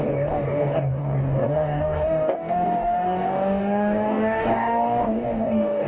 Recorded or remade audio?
remade